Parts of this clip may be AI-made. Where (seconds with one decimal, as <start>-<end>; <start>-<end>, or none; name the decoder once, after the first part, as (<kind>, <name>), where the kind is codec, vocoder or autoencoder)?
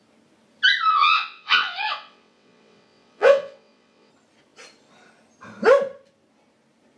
0.9-4.1 (vocoder, WaveNeXt)